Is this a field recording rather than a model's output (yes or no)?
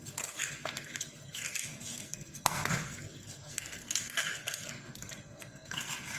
no